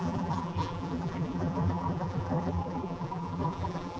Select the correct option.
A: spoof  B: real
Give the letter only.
A